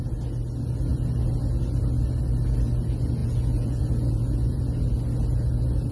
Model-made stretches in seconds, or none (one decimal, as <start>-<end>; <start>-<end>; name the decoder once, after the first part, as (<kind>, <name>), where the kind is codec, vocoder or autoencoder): 3.2-4.6 (vocoder, Vocos)